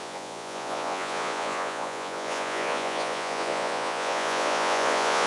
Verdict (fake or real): fake